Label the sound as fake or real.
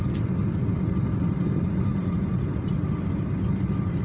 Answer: real